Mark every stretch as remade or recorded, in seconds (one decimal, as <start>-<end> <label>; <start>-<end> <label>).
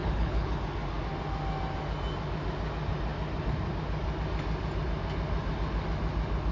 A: 0.0-0.6 remade; 0.6-6.5 recorded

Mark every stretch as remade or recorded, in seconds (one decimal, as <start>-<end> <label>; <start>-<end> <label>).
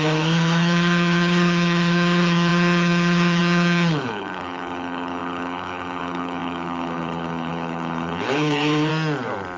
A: 0.0-8.9 remade; 8.9-9.6 recorded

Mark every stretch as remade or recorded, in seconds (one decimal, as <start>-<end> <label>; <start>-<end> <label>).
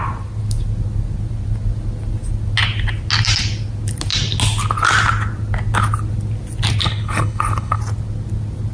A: 0.0-6.8 recorded; 6.8-7.8 remade; 7.8-8.7 recorded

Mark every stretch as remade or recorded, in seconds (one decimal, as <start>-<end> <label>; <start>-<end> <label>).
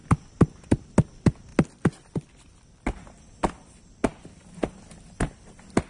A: 0.0-5.9 recorded